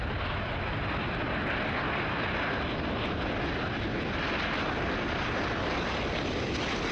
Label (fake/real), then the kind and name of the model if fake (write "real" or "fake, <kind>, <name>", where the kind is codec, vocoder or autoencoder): real